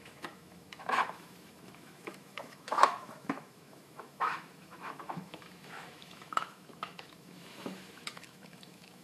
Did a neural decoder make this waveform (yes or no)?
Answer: yes